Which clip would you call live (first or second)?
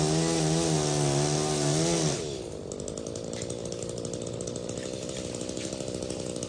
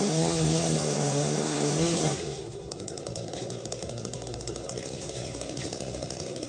first